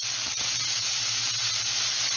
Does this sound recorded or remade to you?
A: recorded